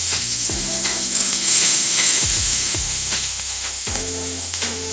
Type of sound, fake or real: fake